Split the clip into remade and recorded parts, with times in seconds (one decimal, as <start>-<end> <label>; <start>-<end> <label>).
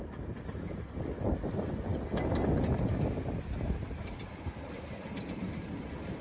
0.0-6.2 recorded